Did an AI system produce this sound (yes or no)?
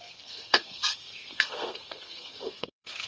yes